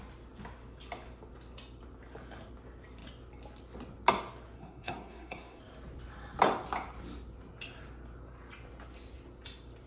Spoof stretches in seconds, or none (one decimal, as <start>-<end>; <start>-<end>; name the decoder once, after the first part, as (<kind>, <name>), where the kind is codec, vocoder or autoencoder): 4.6-5.6 (codec, SNAC)